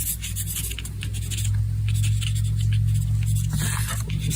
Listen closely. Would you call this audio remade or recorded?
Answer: recorded